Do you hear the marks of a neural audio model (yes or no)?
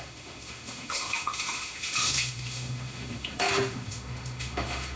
yes